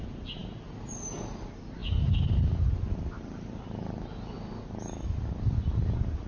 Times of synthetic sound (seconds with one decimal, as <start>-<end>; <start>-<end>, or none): none